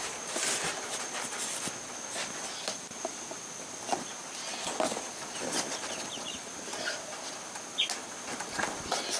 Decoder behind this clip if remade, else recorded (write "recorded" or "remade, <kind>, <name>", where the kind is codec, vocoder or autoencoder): recorded